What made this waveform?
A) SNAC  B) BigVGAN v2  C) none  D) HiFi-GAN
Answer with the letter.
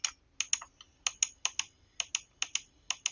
C